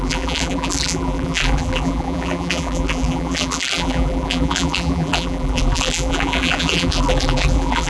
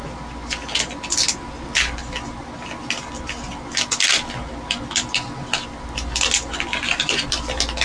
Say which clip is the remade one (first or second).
first